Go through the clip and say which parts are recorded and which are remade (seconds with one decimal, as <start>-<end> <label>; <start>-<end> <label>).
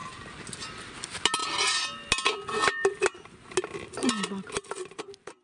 0.0-5.4 recorded